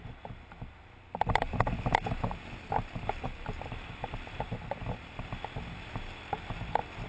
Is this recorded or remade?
recorded